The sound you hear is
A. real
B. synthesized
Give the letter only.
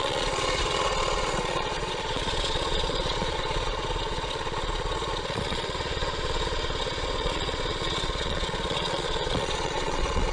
B